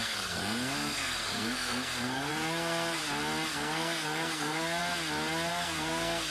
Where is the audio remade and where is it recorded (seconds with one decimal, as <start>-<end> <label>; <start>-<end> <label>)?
0.0-3.0 remade; 3.0-3.5 recorded; 3.5-4.8 remade; 4.8-5.5 recorded; 5.5-6.3 remade